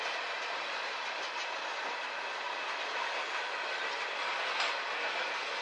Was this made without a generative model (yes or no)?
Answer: yes